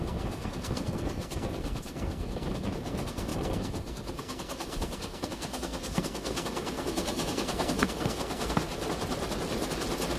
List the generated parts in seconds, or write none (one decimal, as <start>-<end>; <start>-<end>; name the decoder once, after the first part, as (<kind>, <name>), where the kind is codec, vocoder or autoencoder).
0.0-8.6 (codec, SNAC)